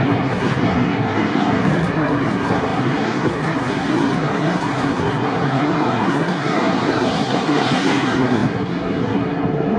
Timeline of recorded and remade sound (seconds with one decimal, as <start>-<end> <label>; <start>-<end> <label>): 0.0-9.8 remade